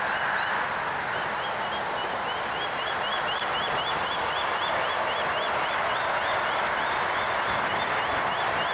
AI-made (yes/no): no